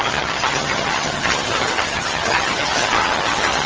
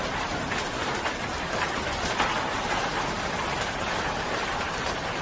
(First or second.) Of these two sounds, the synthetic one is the first